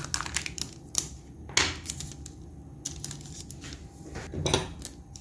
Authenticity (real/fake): real